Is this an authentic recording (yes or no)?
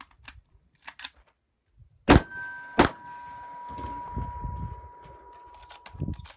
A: yes